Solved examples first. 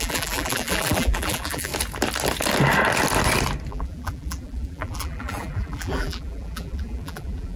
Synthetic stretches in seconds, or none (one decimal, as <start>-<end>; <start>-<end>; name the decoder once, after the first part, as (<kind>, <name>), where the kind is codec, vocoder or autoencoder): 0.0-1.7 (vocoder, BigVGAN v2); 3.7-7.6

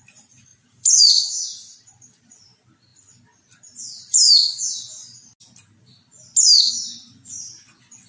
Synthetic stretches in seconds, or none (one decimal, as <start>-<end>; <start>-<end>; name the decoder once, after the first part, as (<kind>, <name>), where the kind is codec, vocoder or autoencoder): 0.5-2.3 (vocoder, BigVGAN v2)

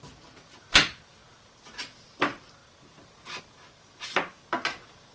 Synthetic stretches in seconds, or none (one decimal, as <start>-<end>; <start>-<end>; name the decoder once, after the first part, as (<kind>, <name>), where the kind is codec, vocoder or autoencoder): none

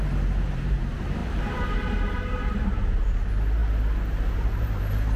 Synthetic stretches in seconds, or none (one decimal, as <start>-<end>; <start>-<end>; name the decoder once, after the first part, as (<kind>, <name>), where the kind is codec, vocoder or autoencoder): 0.0-5.2 (vocoder, BigVGAN v2)

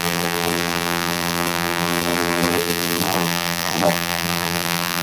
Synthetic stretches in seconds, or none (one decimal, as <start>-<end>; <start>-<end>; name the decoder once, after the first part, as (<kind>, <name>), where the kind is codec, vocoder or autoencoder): 0.0-5.0 (vocoder, BigVGAN v2)

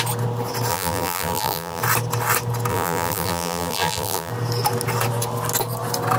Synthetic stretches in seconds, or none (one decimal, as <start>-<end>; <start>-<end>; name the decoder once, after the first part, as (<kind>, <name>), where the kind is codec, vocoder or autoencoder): 0.7-1.8 (vocoder, BigVGAN v2); 2.7-4.3

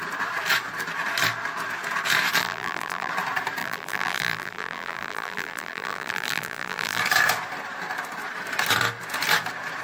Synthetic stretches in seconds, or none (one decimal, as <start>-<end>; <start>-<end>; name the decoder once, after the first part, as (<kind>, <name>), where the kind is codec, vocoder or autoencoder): 2.4-3.1 (vocoder, BigVGAN v2); 3.6-7.0

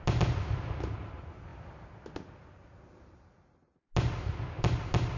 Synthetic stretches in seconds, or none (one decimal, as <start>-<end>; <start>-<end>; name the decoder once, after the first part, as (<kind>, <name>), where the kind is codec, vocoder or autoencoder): none